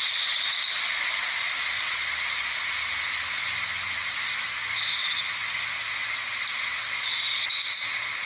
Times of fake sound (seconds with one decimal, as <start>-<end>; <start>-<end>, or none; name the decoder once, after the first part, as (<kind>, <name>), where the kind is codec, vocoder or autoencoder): none